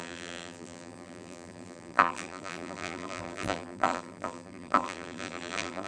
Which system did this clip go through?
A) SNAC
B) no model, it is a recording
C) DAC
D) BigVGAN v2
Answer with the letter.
D